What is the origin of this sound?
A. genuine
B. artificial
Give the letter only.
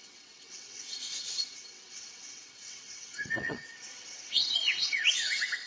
B